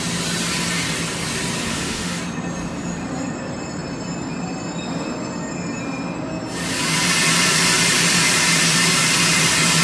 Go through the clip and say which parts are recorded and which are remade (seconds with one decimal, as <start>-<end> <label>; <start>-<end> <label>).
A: 0.0-1.7 recorded; 1.7-2.2 remade; 2.2-9.8 recorded